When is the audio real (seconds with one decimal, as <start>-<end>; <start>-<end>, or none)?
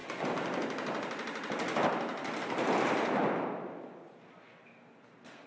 3.3-5.5